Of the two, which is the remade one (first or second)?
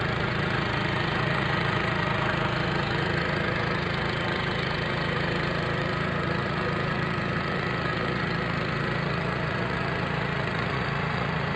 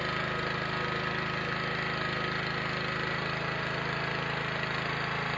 first